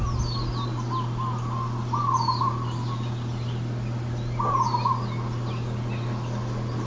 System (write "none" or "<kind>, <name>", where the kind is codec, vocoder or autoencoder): none